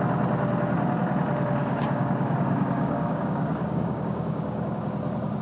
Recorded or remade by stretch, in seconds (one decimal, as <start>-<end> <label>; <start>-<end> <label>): 0.0-1.6 recorded; 1.6-4.8 remade; 4.8-5.4 recorded